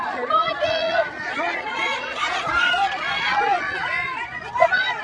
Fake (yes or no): yes